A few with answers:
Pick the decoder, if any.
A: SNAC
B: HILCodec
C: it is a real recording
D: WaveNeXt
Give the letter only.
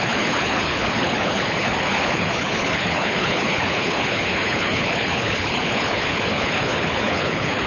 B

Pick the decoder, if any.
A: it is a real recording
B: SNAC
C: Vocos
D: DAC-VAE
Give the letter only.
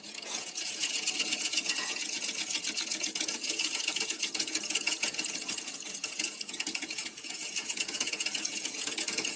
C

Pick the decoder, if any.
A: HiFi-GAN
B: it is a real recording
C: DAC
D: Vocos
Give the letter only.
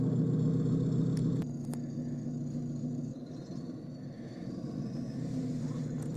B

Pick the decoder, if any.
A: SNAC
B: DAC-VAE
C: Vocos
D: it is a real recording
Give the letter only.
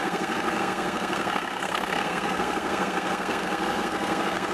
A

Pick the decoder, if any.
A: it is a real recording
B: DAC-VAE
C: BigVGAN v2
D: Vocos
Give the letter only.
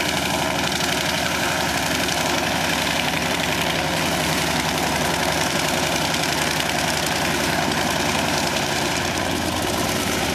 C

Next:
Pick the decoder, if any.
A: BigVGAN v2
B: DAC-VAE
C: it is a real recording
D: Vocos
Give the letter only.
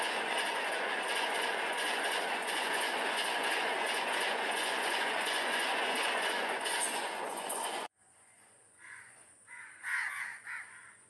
D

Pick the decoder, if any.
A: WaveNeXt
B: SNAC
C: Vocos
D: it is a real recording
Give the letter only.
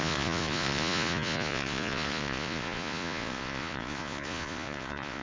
C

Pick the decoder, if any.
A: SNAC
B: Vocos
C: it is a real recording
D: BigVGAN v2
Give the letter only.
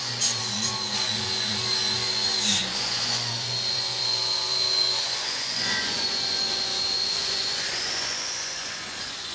B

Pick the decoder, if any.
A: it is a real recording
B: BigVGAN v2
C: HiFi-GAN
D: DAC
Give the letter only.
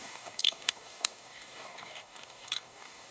D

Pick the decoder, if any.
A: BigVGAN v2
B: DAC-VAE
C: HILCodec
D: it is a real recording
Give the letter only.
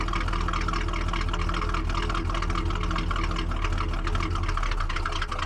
D